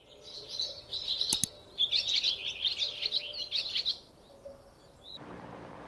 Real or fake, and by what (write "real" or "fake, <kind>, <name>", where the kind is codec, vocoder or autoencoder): real